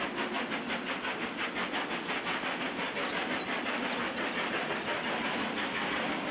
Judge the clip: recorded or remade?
recorded